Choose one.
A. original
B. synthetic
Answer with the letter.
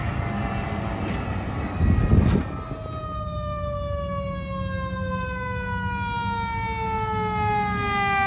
A